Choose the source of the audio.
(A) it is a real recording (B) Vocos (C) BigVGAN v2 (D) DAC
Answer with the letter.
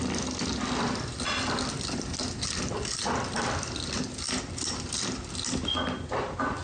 A